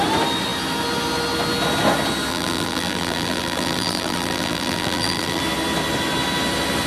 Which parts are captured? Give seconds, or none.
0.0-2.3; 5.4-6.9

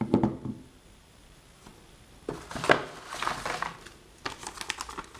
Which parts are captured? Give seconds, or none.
0.0-5.2

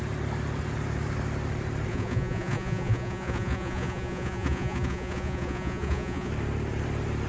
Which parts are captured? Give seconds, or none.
0.0-1.9; 6.3-7.3

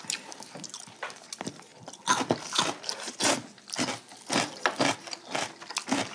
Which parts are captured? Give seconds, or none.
0.0-6.1

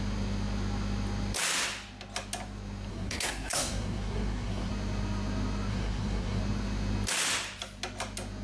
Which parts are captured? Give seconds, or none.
0.0-2.9; 4.7-5.7; 6.4-8.4

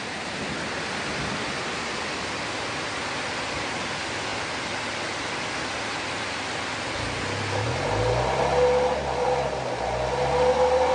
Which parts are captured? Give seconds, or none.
0.0-10.9

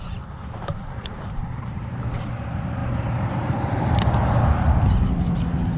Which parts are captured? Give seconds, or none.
0.0-0.4; 2.0-2.8; 4.0-5.8